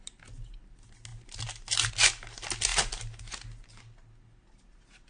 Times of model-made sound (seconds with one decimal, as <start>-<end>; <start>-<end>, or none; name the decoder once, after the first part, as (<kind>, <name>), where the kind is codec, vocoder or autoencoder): none